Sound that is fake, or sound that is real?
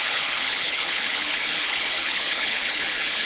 fake